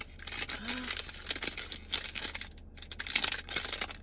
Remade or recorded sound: recorded